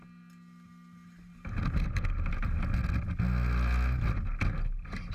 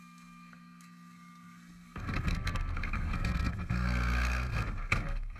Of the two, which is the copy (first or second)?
second